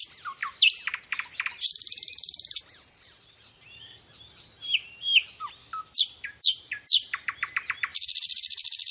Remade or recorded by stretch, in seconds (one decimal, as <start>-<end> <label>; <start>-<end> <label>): 0.0-8.9 recorded